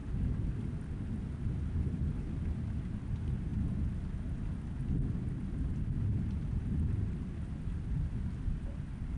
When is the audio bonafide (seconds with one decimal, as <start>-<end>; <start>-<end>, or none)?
0.0-9.2